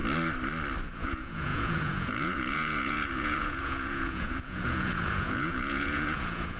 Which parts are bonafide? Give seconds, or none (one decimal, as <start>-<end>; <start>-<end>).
0.0-0.9